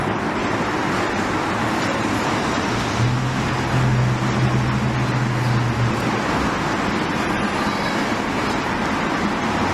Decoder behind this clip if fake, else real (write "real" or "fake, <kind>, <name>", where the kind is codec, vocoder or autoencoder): real